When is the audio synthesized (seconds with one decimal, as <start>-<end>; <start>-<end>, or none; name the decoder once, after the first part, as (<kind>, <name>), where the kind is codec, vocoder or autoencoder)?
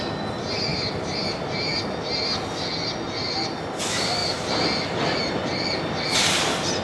none